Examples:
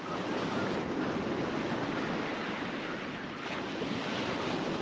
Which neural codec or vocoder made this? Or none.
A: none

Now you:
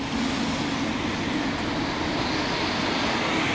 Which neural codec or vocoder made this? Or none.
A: none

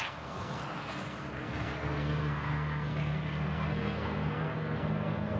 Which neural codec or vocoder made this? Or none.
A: codec, SNAC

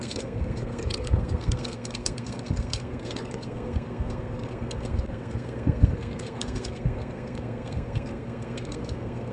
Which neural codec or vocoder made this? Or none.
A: codec, SNAC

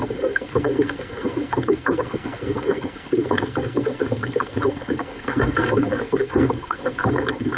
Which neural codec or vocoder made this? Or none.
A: codec, SNAC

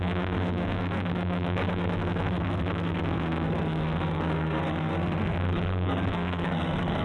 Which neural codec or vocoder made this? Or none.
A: codec, SNAC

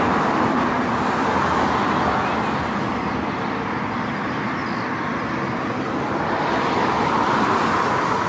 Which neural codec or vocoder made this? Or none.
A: none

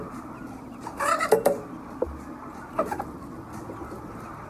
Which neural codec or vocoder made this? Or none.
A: none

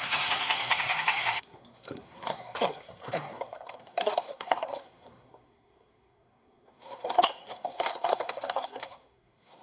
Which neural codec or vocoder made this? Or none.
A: codec, SNAC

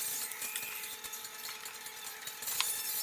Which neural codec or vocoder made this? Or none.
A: none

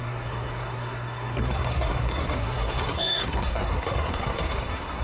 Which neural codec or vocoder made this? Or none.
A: codec, SNAC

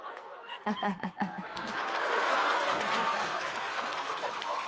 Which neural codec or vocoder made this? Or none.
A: codec, SNAC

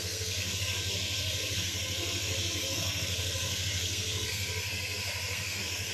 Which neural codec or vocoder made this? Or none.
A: codec, SNAC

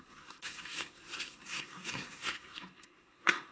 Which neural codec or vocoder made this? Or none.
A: codec, SNAC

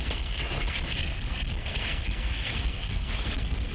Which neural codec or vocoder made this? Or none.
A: codec, SNAC